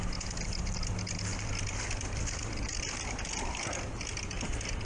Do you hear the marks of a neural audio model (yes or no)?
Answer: yes